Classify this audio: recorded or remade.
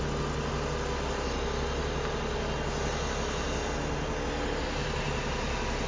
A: recorded